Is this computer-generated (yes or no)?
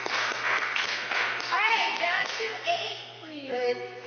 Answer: yes